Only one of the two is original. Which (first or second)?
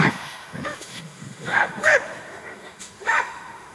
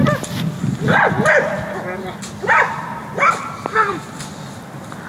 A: second